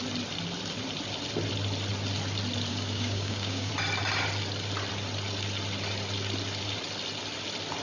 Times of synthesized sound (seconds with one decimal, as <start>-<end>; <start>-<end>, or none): 2.7-3.7